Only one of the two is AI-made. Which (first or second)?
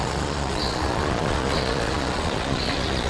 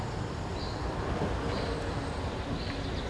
first